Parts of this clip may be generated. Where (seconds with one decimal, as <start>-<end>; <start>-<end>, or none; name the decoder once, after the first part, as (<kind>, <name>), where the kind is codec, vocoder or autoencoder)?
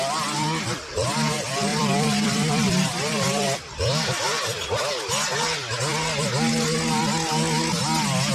1.7-5.1 (vocoder, BigVGAN v2)